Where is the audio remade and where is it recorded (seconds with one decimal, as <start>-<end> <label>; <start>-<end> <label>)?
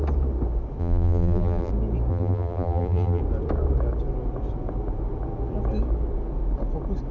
0.0-0.8 recorded; 0.8-1.7 remade; 1.7-2.1 recorded; 2.1-3.2 remade; 3.2-7.1 recorded